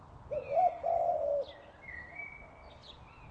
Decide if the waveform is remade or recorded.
recorded